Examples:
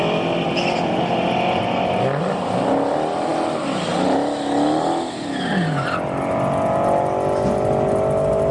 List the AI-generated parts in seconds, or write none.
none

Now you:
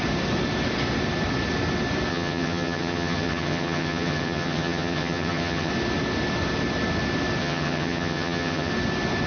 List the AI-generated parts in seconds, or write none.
2.1-5.7; 7.4-8.7

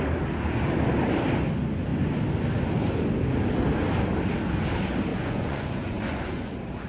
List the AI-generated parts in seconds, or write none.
5.1-6.5

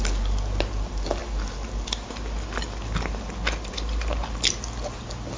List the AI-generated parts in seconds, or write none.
none

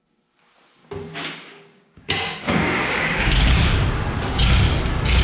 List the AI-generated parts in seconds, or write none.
0.8-3.9

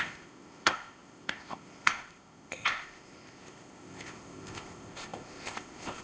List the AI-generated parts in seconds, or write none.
0.0-6.0

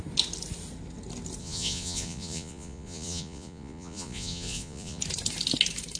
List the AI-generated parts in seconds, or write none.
1.4-5.0